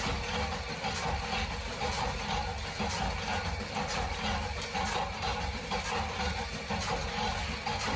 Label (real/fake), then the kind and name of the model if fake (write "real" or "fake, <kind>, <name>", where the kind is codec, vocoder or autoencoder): real